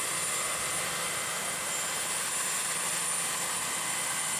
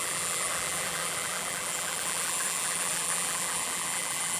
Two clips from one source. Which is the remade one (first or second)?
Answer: second